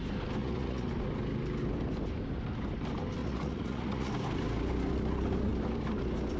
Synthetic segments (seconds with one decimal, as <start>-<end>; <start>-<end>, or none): 0.4-0.9; 3.2-4.1